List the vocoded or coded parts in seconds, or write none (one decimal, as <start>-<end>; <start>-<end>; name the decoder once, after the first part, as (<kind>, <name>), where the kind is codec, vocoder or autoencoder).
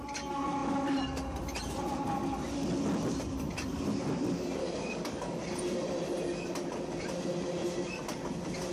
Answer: 4.6-5.4 (codec, DAC)